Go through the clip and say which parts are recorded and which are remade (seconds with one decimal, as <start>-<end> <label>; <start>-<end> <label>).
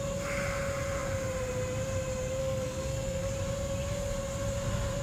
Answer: 0.0-2.4 recorded; 2.4-3.3 remade; 3.3-5.0 recorded